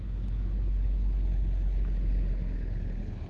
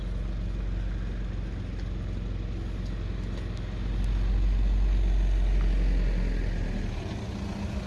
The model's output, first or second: first